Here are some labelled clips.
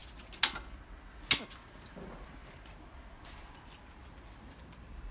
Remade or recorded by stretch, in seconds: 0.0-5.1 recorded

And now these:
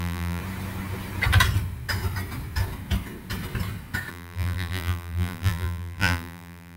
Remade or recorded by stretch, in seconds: 0.0-0.4 remade; 0.4-4.1 recorded; 4.1-6.8 remade

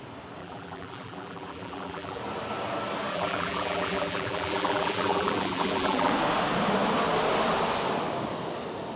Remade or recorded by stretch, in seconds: 0.0-0.4 recorded; 0.4-2.2 remade; 2.2-3.1 recorded; 3.1-6.1 remade; 6.1-9.0 recorded